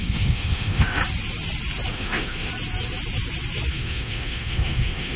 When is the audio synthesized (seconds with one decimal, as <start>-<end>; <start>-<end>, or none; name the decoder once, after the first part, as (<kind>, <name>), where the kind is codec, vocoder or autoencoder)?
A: 0.0-1.0 (autoencoder, DAC-VAE); 1.9-2.5; 3.7-5.2